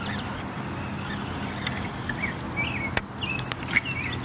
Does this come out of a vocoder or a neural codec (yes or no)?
no